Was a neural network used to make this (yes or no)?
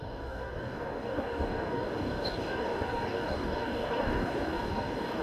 yes